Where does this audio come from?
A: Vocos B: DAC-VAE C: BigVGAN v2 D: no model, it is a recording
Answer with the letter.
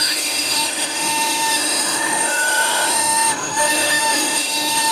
B